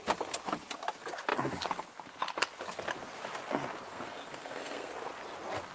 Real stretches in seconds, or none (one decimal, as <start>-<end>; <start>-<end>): 0.0-3.9; 4.9-5.7